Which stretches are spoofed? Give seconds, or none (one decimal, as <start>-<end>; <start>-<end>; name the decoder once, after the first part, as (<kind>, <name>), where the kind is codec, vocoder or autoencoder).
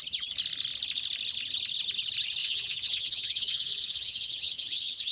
2.4-5.1 (vocoder, WaveNeXt)